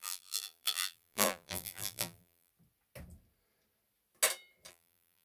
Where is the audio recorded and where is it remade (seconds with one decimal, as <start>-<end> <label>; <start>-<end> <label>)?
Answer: 0.0-2.5 remade; 2.5-4.7 recorded; 4.7-5.2 remade